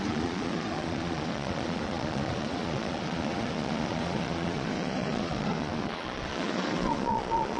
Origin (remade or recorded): remade